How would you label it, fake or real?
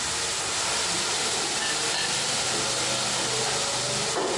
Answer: real